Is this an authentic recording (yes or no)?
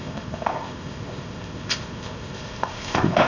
no